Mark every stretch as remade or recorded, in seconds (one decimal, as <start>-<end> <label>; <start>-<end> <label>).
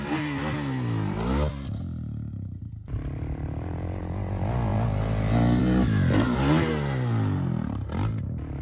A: 0.0-8.6 recorded